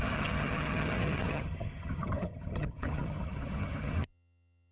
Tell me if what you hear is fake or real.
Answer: fake